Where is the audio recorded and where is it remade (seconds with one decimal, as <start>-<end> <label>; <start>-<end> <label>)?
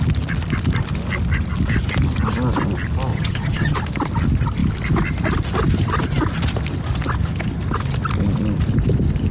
0.0-3.1 recorded; 3.1-3.8 remade; 3.8-9.3 recorded